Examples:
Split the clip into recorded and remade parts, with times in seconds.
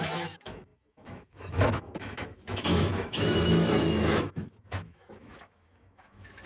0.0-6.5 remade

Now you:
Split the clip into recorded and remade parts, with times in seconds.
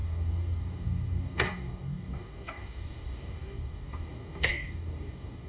0.0-5.5 remade